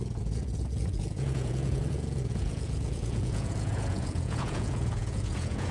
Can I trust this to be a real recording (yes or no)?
no